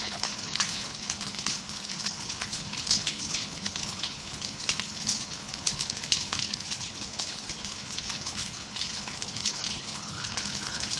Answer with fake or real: fake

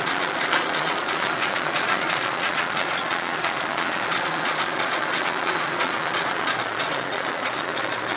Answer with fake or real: fake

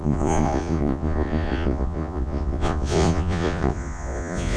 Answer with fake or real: fake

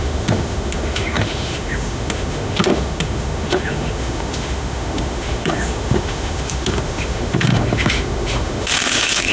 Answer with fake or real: fake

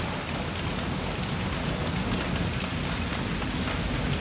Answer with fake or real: real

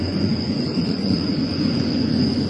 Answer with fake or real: fake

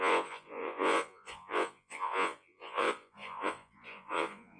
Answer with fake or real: fake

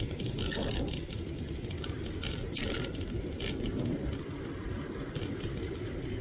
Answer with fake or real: real